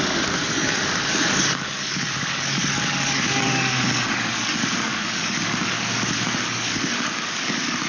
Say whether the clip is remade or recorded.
remade